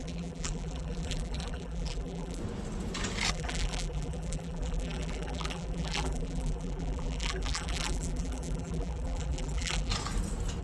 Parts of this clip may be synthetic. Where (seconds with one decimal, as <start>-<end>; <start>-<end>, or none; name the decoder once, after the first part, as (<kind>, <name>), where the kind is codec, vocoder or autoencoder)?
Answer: 0.0-2.4 (vocoder, BigVGAN v2); 3.3-9.9